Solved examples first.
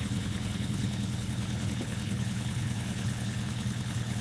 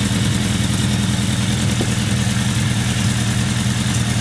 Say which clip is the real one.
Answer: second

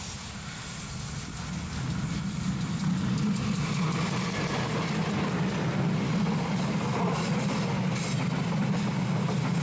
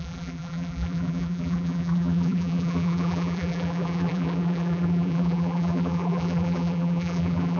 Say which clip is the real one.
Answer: first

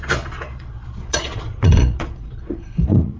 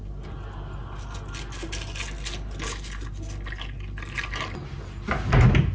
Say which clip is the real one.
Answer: second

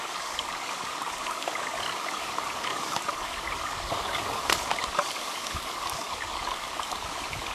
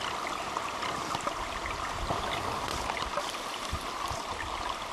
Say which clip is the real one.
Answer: second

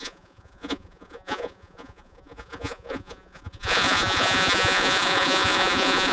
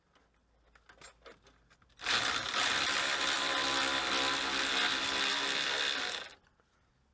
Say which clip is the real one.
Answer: second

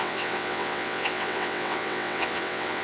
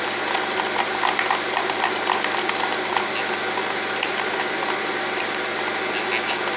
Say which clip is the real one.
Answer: second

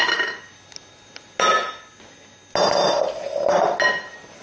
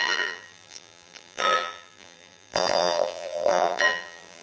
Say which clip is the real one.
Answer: first